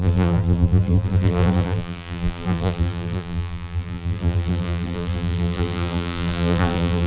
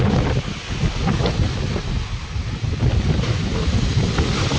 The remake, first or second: first